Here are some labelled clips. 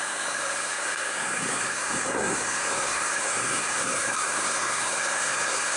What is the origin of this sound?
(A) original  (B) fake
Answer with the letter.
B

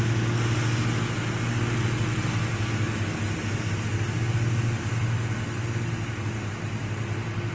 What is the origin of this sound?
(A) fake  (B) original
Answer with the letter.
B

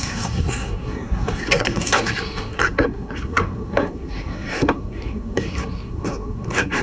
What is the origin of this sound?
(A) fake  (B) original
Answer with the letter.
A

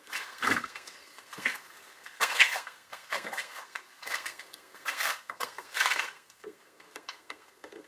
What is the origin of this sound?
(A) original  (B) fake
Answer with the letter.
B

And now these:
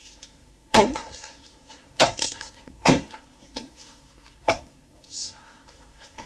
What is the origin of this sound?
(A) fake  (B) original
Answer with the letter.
A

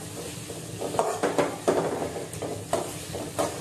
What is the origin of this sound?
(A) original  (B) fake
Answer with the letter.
A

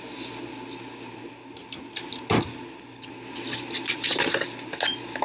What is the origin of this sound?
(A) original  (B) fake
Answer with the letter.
A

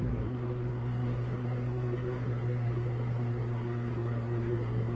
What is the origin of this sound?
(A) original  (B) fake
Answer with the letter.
B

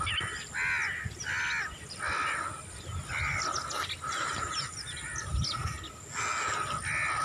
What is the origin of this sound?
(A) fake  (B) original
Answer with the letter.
B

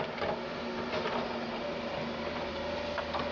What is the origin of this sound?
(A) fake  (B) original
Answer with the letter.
B